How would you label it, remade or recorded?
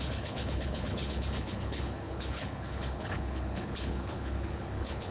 remade